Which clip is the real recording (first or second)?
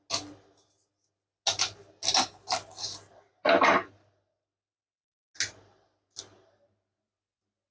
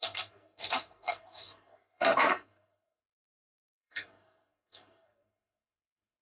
first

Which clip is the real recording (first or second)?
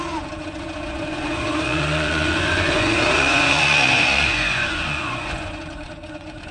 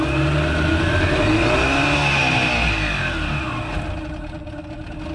second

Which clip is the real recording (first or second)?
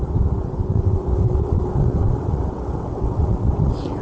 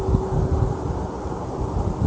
second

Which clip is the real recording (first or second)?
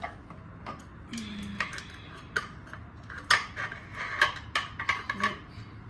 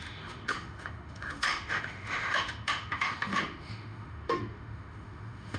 first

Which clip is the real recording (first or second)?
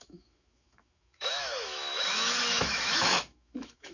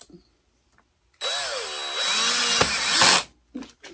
second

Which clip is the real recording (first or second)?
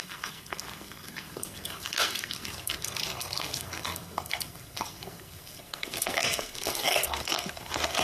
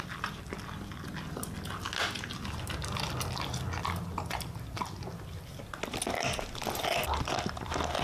second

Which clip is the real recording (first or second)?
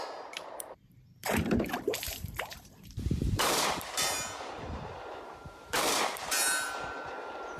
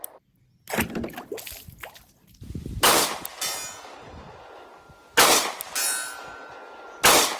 second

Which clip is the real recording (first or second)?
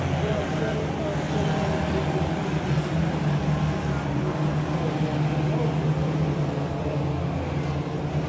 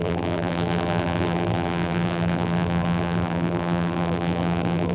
first